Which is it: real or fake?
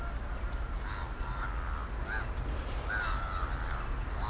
real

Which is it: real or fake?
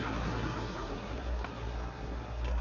fake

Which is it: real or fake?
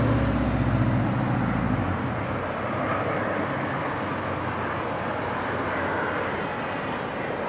real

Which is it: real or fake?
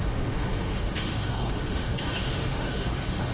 fake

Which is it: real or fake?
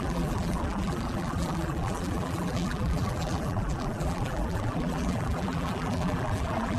fake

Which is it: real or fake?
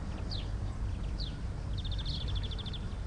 real